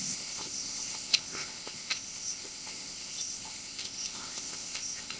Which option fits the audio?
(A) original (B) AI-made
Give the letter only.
B